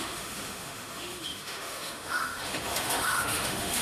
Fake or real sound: fake